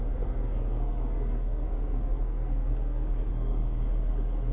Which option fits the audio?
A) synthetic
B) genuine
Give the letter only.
A